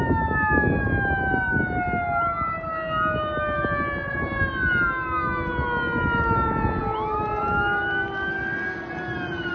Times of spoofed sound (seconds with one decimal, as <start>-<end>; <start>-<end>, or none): none